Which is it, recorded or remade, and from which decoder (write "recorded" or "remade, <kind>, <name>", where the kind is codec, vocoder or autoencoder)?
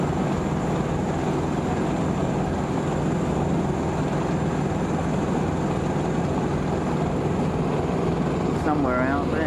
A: recorded